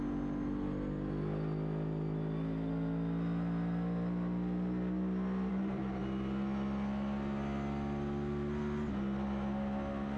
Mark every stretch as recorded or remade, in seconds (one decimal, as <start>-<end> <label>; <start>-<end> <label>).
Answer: 0.0-5.5 recorded; 5.5-6.0 remade; 6.0-10.2 recorded